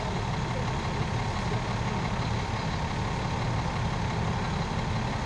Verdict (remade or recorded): recorded